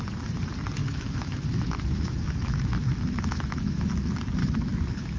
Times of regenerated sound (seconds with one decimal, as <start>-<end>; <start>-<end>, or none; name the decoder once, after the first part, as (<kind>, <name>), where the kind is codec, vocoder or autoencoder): 0.8-3.9 (autoencoder, DAC-VAE); 4.4-5.2